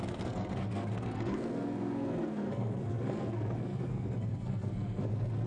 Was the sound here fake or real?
fake